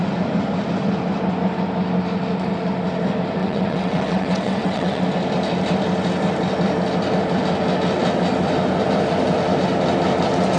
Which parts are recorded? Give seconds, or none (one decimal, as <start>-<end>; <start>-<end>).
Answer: 0.0-3.4; 5.0-10.6